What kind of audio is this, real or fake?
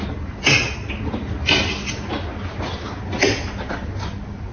real